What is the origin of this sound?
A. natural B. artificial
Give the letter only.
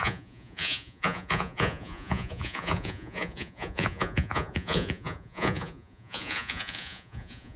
B